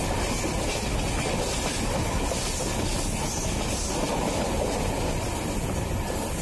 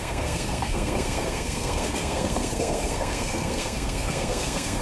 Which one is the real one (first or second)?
first